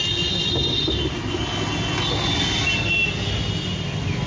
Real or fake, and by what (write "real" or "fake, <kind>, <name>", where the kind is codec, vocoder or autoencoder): real